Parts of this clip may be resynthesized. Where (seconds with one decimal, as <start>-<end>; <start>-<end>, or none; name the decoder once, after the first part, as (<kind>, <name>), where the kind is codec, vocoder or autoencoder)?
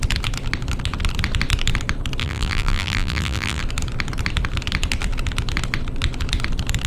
2.2-3.6 (vocoder, BigVGAN v2)